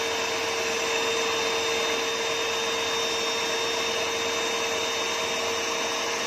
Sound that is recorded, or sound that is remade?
recorded